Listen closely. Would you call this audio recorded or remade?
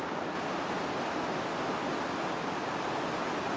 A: recorded